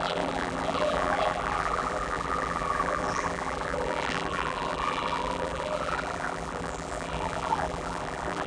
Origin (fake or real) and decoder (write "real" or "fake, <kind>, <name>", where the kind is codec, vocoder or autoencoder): fake, vocoder, BigVGAN v2